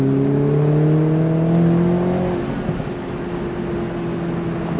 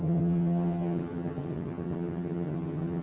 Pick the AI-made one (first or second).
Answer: second